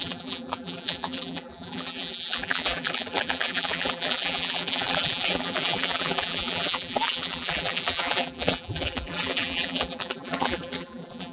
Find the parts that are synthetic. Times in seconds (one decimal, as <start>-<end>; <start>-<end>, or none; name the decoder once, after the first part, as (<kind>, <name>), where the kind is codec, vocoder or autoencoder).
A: 0.0-11.3 (vocoder, BigVGAN v2)